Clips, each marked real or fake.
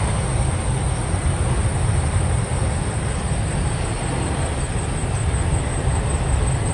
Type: real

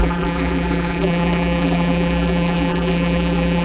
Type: fake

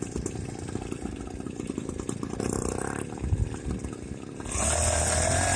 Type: real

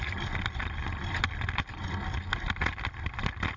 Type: real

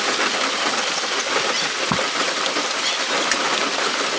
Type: fake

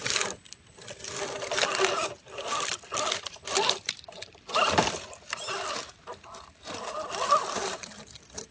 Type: fake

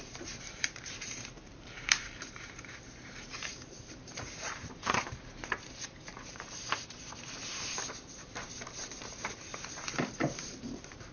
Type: fake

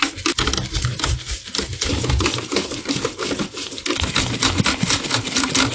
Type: real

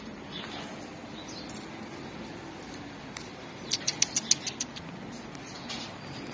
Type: real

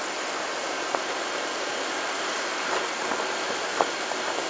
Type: fake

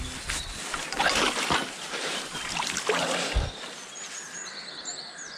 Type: real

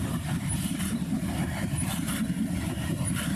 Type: fake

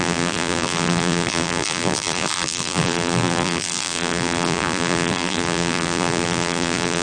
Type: fake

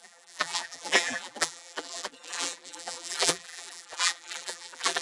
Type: fake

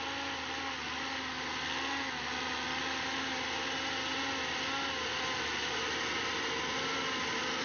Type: real